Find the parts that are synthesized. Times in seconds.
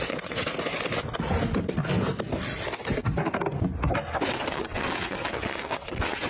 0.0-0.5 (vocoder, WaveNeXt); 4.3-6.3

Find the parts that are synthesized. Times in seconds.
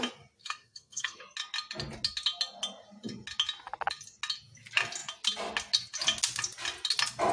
0.4-1.2 (codec, SNAC)